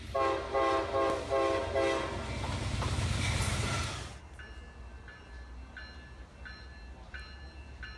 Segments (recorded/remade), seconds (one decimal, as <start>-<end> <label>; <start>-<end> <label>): 0.0-8.0 recorded